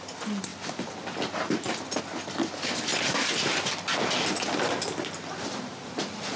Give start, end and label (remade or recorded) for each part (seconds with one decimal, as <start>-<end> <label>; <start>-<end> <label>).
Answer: 0.0-5.3 recorded; 5.3-6.0 remade; 6.0-6.4 recorded